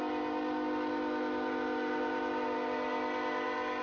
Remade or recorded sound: recorded